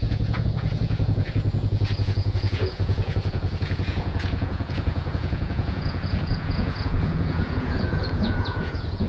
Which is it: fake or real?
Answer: fake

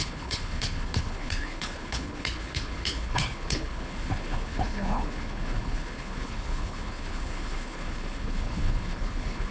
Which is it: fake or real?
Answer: fake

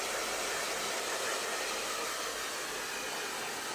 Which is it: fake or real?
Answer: real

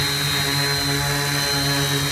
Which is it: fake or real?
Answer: real